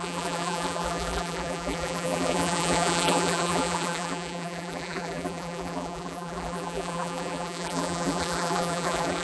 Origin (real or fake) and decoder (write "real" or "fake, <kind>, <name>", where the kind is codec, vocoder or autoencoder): fake, vocoder, BigVGAN v2